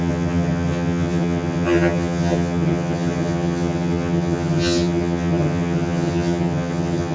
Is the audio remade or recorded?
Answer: remade